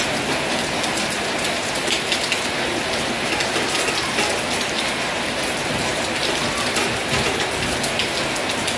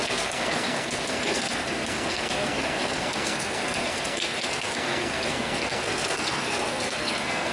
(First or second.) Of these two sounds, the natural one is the first